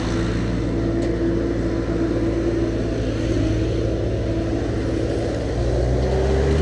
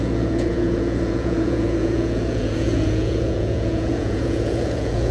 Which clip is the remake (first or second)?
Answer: second